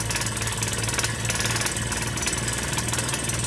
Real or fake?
real